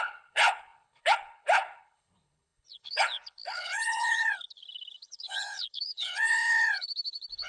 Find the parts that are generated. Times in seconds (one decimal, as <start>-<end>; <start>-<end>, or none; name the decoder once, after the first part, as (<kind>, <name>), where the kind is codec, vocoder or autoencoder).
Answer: 0.0-7.5 (codec, HILCodec)